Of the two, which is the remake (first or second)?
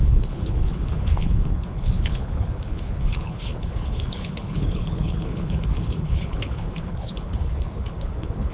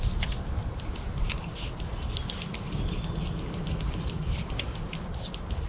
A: first